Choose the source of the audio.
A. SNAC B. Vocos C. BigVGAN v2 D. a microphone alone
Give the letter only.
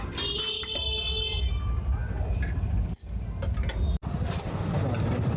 D